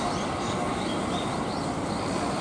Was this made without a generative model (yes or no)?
yes